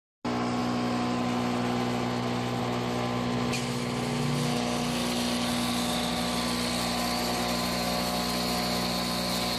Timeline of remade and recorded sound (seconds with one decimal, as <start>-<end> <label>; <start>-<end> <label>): 0.0-9.6 recorded